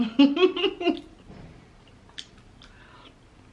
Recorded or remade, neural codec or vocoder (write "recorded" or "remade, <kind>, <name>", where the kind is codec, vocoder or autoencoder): recorded